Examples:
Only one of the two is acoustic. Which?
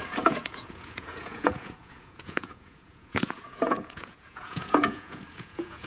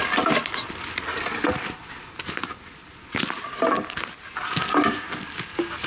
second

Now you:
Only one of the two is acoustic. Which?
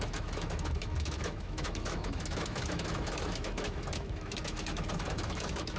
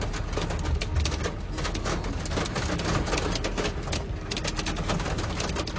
second